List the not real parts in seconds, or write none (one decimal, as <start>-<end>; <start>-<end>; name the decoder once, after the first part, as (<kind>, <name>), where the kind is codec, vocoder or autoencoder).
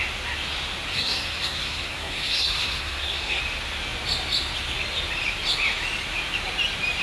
0.9-3.4 (codec, SNAC)